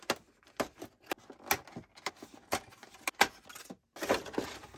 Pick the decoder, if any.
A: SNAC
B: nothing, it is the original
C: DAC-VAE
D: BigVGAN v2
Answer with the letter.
B